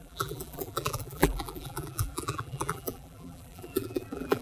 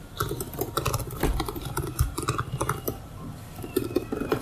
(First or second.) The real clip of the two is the second